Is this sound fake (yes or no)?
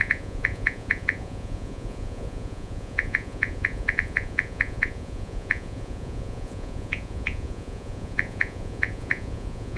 yes